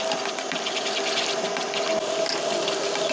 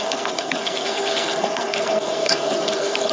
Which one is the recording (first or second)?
first